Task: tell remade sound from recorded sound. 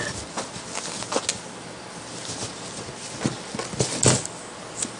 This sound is recorded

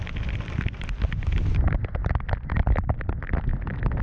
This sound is recorded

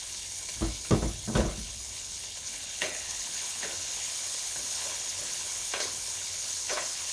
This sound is remade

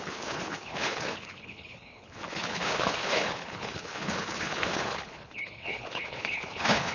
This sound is remade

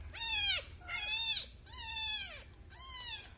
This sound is recorded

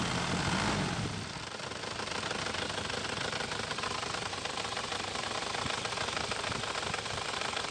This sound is recorded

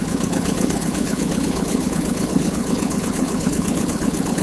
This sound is remade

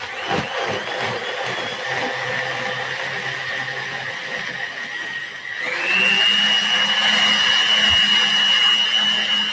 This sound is recorded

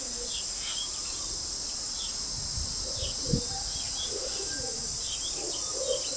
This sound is recorded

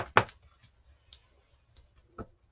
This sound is recorded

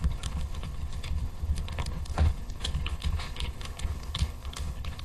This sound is remade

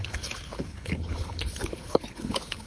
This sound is remade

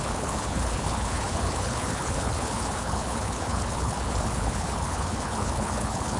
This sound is remade